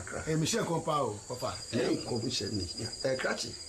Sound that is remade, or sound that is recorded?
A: recorded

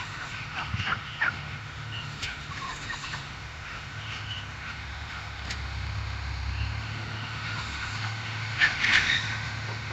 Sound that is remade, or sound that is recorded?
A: remade